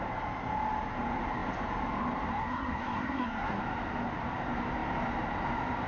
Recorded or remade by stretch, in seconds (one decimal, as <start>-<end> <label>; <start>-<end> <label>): 0.0-2.3 recorded; 2.3-3.6 remade; 3.6-5.9 recorded